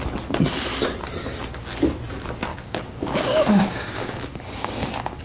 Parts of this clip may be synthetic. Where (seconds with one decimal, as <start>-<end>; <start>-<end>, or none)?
2.5-5.2